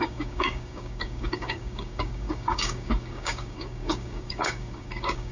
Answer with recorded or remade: remade